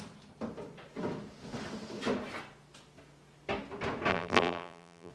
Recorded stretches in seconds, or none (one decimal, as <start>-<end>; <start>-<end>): 0.0-4.1

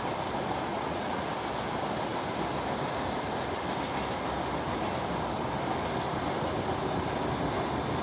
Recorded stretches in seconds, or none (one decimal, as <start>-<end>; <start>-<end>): 0.0-0.7; 1.3-8.0

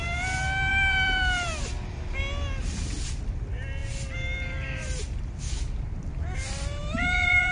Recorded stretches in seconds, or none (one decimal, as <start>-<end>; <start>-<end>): 0.0-0.7; 1.6-6.8

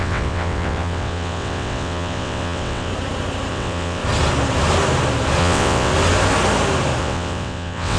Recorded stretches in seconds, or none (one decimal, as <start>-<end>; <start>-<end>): 2.9-3.5; 4.0-5.4; 5.9-7.0

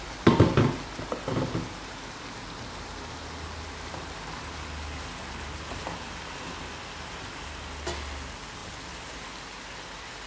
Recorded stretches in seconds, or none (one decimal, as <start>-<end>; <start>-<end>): 0.0-10.3

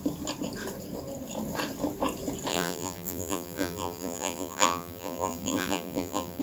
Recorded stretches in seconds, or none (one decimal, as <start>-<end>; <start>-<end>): 0.0-2.5